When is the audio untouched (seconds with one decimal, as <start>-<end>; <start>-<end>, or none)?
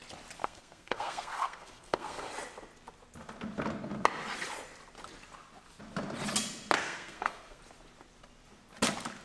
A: 0.0-0.4; 2.3-6.8; 7.6-9.2